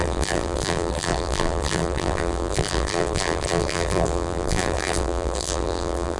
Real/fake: fake